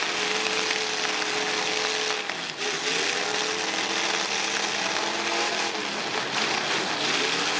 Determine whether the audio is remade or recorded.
recorded